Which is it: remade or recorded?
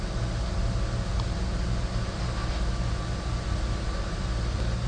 recorded